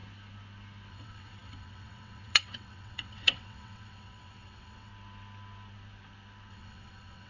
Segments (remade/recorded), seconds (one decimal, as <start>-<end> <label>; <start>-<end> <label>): 0.0-0.9 recorded; 0.9-4.9 remade; 4.9-6.5 recorded; 6.5-7.3 remade